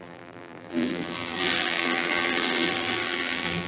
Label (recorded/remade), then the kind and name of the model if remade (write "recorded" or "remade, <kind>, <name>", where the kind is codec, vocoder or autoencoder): remade, vocoder, BigVGAN v2